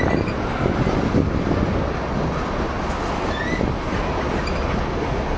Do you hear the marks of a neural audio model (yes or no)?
no